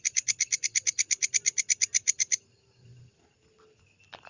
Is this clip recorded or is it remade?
recorded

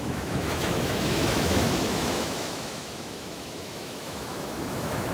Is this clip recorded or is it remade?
remade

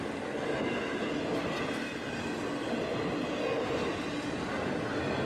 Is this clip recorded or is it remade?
recorded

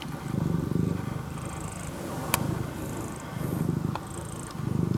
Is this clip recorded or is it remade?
recorded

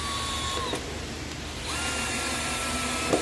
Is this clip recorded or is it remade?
recorded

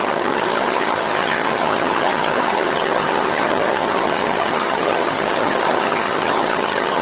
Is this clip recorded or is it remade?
remade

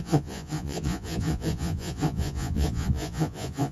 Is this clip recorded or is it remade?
remade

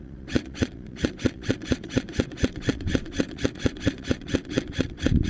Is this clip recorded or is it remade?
remade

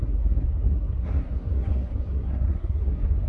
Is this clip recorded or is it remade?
remade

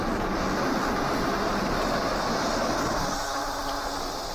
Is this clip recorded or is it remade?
recorded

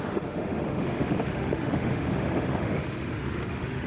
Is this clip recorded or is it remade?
remade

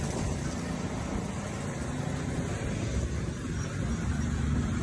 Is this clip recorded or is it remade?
recorded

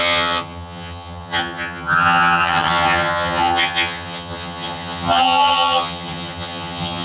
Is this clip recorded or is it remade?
remade